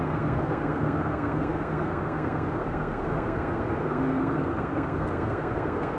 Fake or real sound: fake